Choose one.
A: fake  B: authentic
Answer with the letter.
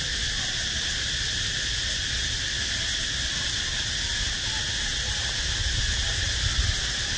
B